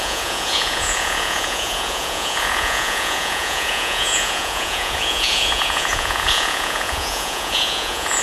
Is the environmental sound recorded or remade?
remade